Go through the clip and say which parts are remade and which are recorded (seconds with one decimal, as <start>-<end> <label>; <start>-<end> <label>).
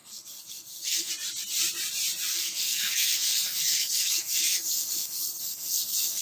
0.0-1.1 remade; 1.1-2.3 recorded; 2.3-6.2 remade